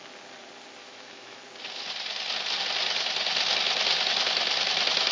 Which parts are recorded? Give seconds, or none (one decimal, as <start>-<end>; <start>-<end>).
0.0-0.8; 1.4-5.1